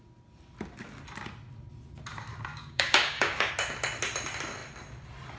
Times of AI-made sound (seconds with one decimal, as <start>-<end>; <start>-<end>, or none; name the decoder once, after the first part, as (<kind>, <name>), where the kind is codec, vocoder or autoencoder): 2.5-3.5 (codec, DAC)